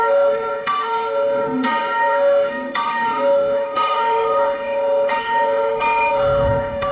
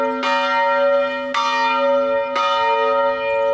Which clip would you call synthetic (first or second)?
first